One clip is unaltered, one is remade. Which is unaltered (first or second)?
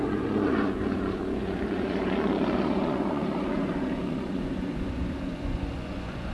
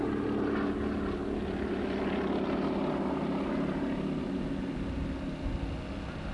second